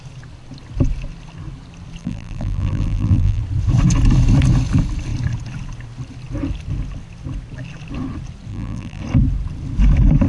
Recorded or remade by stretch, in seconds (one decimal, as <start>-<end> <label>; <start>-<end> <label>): 0.0-2.0 recorded; 2.0-3.4 remade; 3.4-8.5 recorded; 8.5-9.0 remade; 9.0-10.3 recorded